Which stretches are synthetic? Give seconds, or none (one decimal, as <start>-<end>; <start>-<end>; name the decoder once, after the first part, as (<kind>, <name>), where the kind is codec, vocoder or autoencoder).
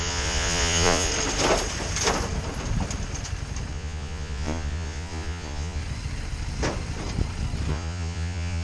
0.0-1.1 (vocoder, Vocos); 3.7-5.8; 7.7-8.6